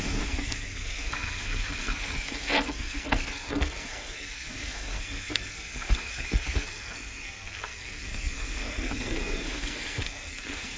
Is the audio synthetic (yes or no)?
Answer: yes